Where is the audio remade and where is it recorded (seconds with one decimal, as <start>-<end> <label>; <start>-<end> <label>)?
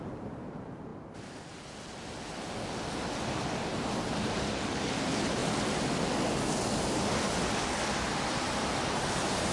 0.0-0.9 remade; 0.9-3.4 recorded; 3.4-5.4 remade; 5.4-8.8 recorded; 8.8-9.5 remade